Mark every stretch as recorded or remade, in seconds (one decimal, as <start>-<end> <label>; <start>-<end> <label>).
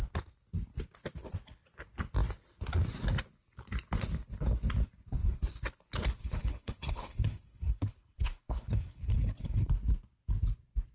0.0-6.2 recorded; 6.2-9.7 remade; 9.7-10.9 recorded